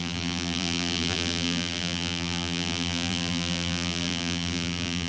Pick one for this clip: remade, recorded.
remade